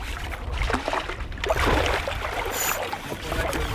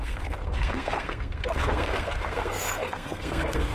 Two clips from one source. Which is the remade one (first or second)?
second